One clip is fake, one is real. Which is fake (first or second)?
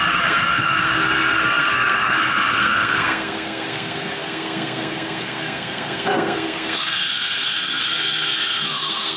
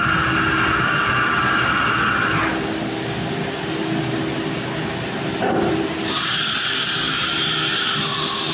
first